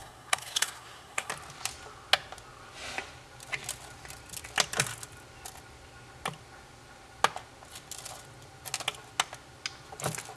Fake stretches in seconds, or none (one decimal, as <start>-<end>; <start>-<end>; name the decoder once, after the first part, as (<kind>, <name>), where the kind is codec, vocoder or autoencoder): 0.0-1.3 (codec, SNAC)